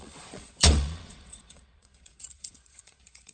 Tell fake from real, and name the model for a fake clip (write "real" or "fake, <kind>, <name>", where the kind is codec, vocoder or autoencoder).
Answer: fake, vocoder, Vocos